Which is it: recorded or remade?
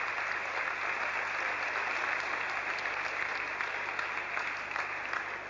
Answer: recorded